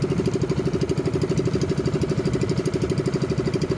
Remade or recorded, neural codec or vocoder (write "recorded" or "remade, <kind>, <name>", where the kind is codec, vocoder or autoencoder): recorded